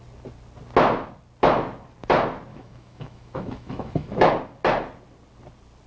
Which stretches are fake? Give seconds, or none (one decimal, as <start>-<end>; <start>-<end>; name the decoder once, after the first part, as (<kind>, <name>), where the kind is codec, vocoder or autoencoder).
2.5-4.3 (autoencoder, DAC-VAE)